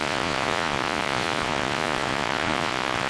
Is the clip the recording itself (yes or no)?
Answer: no